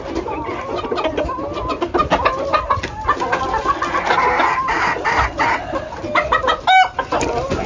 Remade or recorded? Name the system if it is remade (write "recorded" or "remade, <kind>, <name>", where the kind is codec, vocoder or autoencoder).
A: recorded